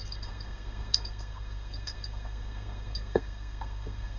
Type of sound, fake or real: fake